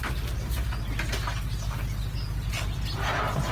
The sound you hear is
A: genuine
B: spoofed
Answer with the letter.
A